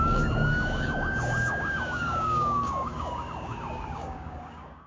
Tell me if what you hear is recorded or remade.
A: remade